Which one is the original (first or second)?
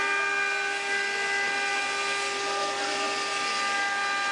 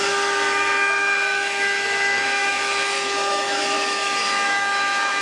first